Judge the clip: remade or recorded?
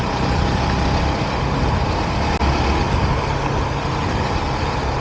recorded